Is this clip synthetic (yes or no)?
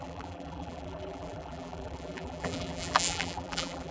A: yes